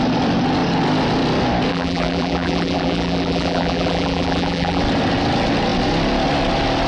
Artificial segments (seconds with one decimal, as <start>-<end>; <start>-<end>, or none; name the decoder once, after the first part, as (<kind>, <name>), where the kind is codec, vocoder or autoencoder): 1.7-4.8 (vocoder, BigVGAN v2)